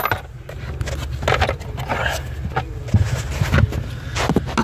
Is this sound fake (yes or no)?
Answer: no